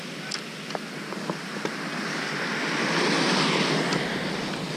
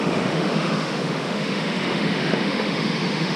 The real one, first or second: first